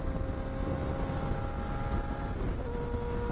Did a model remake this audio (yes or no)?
no